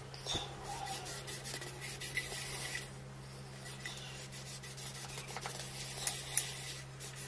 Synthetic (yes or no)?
no